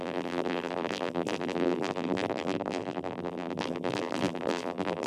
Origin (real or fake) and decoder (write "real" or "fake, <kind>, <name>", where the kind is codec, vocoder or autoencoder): fake, vocoder, BigVGAN v2